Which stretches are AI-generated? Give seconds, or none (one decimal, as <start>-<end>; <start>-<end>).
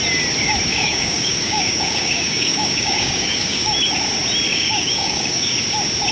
0.7-3.8; 4.5-5.6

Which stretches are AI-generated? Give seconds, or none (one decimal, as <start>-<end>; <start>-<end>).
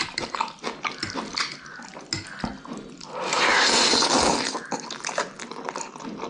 none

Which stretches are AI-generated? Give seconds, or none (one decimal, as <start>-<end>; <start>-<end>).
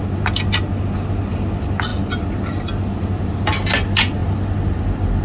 none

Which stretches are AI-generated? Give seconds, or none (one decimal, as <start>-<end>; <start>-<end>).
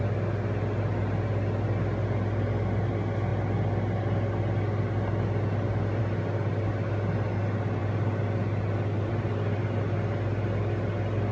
none